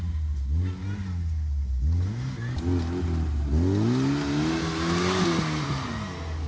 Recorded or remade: recorded